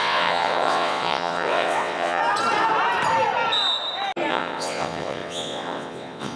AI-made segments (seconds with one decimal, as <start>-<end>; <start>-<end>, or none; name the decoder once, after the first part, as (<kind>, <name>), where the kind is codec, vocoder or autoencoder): 0.0-2.2 (vocoder, WaveNeXt); 4.3-6.4